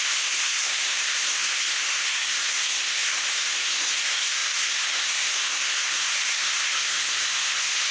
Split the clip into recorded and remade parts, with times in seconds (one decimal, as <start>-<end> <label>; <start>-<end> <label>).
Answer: 0.0-7.9 remade